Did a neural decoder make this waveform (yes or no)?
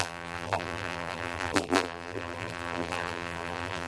yes